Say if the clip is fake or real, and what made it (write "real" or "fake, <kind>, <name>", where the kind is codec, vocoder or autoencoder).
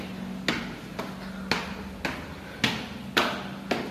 real